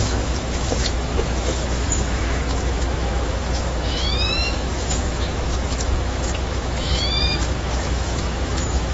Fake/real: fake